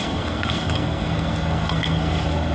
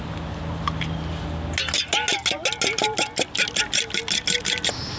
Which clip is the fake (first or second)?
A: first